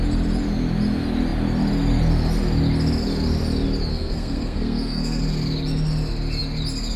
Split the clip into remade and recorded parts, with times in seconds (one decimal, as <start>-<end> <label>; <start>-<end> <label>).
0.0-3.9 recorded; 3.9-5.2 remade; 5.2-7.0 recorded